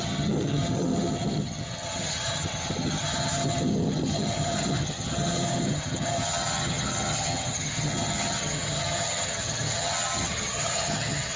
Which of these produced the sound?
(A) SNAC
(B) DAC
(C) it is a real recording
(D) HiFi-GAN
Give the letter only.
D